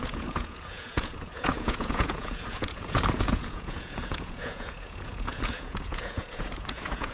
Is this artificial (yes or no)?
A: yes